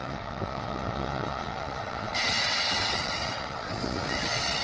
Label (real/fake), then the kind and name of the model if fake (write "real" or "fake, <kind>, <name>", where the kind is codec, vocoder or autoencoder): fake, vocoder, WaveNeXt